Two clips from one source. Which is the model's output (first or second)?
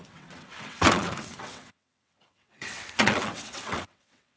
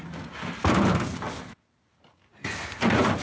first